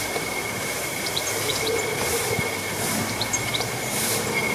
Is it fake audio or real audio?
fake